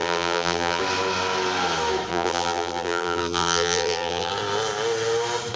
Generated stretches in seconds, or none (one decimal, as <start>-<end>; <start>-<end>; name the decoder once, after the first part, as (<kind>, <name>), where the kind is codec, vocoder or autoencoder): 0.0-0.8 (vocoder, BigVGAN v2); 2.1-4.3